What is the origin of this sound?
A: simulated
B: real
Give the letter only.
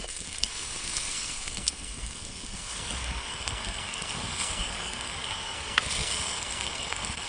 A